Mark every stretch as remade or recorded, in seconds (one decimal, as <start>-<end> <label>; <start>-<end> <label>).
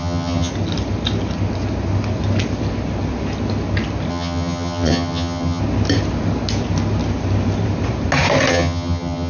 0.0-0.5 remade; 0.5-4.1 recorded; 4.1-5.6 remade; 5.6-8.5 recorded; 8.5-9.3 remade